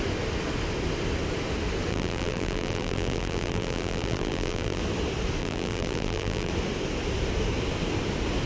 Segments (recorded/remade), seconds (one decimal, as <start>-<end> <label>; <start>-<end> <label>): 0.0-1.9 recorded; 1.9-4.8 remade; 4.8-5.4 recorded; 5.4-6.5 remade; 6.5-8.5 recorded